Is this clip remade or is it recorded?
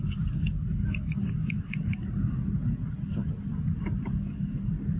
recorded